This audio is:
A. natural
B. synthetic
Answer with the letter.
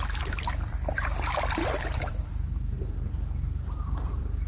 B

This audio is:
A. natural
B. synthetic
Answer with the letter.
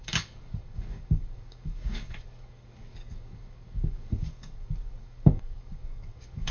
B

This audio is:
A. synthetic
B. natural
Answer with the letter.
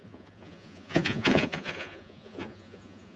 A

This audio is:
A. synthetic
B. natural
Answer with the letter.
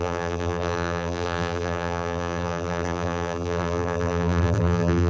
A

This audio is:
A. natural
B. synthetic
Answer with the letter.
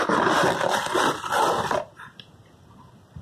A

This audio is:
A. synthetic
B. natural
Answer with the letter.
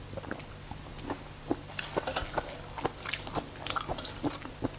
B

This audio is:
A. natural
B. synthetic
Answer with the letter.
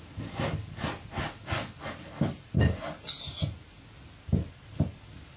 A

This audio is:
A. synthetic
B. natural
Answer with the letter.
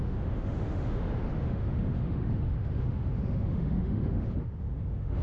A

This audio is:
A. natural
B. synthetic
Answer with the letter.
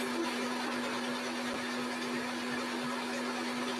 A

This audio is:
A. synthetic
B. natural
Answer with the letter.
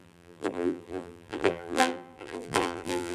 A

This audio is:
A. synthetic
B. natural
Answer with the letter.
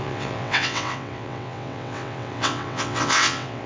A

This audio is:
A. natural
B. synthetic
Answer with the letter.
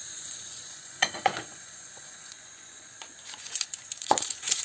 B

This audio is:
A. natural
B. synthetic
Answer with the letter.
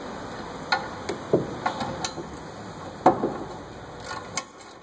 A